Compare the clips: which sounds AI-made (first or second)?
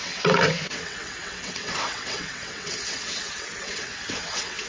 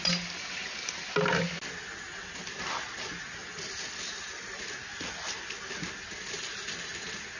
first